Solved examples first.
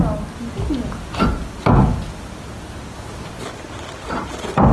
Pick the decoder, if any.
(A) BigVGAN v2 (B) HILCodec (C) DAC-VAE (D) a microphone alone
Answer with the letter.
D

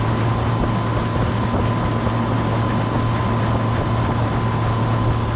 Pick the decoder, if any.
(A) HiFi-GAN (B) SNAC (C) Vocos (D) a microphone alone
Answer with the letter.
D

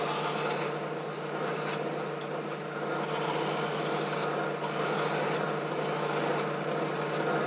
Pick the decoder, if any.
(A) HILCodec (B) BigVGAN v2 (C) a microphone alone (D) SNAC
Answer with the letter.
C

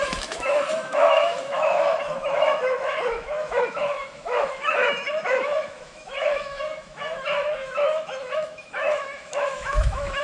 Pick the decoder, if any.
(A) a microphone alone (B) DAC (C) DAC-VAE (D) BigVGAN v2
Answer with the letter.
C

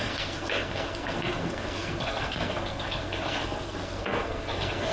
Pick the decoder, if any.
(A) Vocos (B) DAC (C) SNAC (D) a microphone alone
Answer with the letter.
C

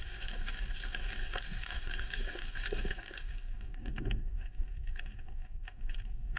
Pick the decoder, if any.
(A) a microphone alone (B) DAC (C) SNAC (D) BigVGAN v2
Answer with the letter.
B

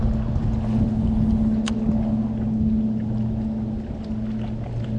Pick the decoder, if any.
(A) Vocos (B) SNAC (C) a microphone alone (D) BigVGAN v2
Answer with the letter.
C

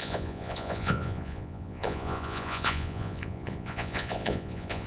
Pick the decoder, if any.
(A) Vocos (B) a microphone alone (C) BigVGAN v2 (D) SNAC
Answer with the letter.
A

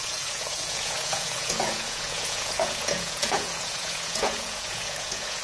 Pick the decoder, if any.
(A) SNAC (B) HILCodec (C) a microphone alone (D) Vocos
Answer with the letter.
D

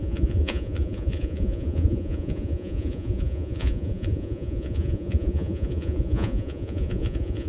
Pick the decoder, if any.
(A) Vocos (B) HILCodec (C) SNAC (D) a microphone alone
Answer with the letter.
A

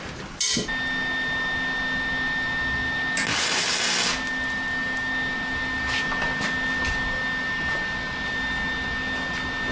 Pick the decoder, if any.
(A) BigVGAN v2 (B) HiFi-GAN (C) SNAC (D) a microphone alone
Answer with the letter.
D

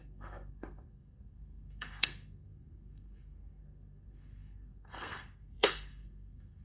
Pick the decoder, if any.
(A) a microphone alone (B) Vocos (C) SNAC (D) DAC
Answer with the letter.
C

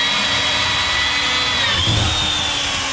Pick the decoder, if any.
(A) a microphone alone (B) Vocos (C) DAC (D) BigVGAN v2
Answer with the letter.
A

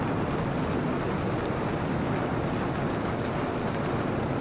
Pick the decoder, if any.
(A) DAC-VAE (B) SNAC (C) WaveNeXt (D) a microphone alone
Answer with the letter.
D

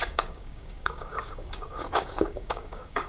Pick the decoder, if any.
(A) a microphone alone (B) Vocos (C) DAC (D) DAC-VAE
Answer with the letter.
C